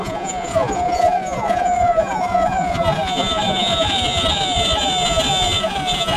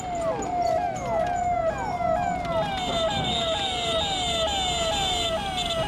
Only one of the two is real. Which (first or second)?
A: second